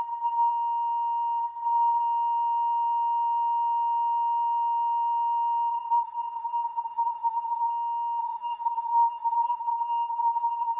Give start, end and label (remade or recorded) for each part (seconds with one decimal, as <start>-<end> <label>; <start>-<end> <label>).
0.0-0.5 remade; 0.5-1.4 recorded; 1.4-2.0 remade; 2.0-5.7 recorded; 5.7-7.7 remade; 7.7-8.2 recorded; 8.2-10.8 remade